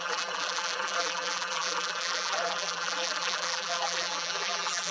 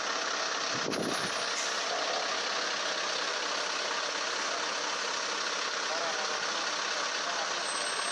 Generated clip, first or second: first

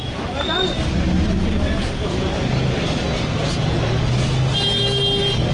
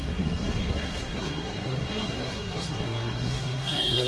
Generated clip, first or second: second